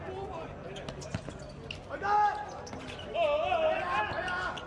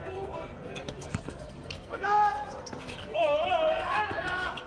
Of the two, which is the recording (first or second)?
first